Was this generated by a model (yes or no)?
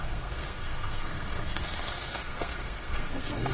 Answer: yes